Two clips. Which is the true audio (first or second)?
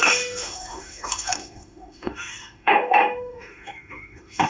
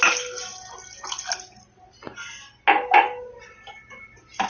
second